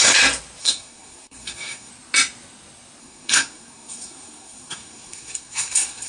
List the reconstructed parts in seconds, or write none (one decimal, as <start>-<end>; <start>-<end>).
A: 0.6-1.9; 3.0-6.1